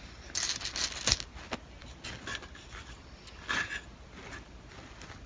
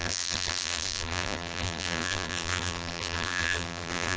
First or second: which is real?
first